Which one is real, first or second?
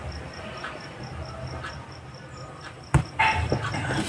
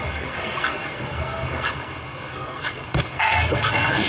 first